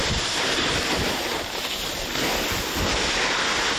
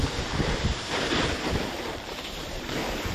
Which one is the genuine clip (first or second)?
first